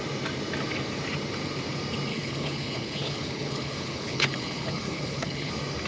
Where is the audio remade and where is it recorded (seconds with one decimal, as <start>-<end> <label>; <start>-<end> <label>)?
0.0-2.1 recorded; 2.1-5.5 remade; 5.5-5.9 recorded

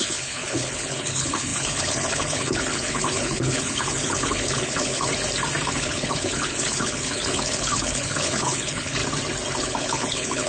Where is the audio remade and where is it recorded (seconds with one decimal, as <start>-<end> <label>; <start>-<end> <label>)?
0.0-5.1 remade; 5.1-5.7 recorded; 5.7-9.0 remade; 9.0-9.6 recorded; 9.6-10.5 remade

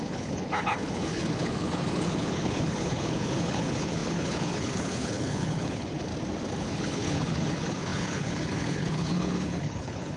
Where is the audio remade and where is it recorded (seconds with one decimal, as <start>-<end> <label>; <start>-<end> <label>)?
0.0-6.1 remade; 6.1-6.6 recorded; 6.6-10.2 remade

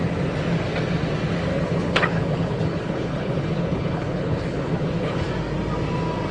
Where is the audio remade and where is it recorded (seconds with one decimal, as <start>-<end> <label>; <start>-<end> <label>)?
0.0-1.5 recorded; 1.5-5.3 remade; 5.3-6.3 recorded

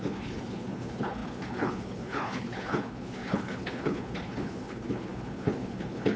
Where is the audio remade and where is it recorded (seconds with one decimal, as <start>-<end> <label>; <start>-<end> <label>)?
0.0-6.2 remade